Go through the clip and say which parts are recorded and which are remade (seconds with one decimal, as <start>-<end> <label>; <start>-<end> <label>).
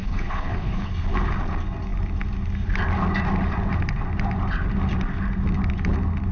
0.0-0.9 remade; 0.9-6.3 recorded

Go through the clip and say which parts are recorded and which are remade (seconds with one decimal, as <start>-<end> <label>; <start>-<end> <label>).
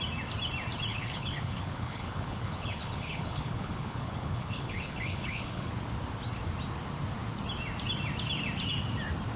0.0-0.9 recorded; 0.9-5.7 remade; 5.7-9.4 recorded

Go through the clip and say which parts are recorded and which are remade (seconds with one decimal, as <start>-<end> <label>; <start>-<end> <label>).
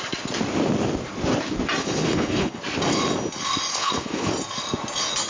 0.0-1.8 recorded; 1.8-2.6 remade; 2.6-3.7 recorded; 3.7-4.3 remade; 4.3-5.3 recorded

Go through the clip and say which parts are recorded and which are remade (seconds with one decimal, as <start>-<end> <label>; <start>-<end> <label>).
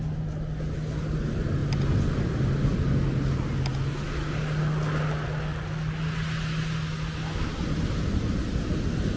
0.0-9.2 recorded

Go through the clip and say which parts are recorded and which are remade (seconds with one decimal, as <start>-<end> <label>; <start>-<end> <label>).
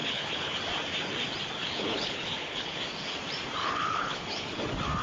0.0-0.6 remade; 0.6-1.6 recorded; 1.6-2.8 remade; 2.8-3.6 recorded; 3.6-4.6 remade; 4.6-5.0 recorded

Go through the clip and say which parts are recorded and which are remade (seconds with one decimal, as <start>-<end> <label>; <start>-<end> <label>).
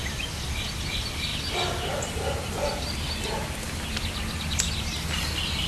0.0-5.7 recorded